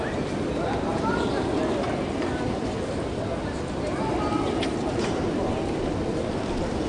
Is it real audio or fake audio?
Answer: real